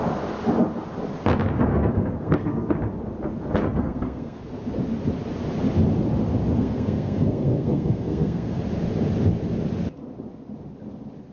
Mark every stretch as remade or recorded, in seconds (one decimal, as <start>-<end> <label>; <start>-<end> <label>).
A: 0.0-1.7 recorded; 1.7-2.7 remade; 2.7-3.7 recorded; 3.7-4.4 remade; 4.4-6.6 recorded; 6.6-8.6 remade; 8.6-11.3 recorded